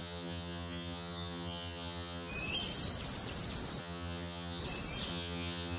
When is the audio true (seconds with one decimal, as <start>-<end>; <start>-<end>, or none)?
2.3-3.8; 4.6-5.1